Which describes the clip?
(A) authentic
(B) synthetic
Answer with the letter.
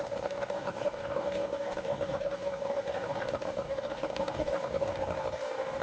B